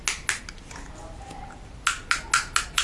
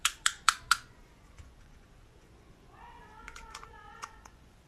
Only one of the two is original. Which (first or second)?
first